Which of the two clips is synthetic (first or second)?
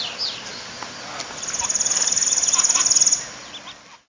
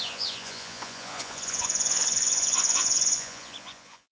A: second